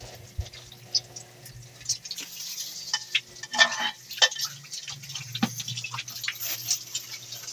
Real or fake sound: real